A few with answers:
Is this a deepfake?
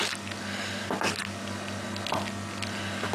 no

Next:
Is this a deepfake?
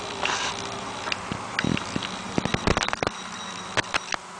no